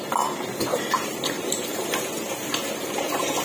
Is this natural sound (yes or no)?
yes